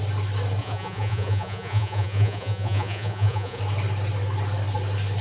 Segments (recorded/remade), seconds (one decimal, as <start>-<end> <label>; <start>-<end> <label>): 0.0-0.6 recorded; 0.6-3.6 remade; 3.6-5.2 recorded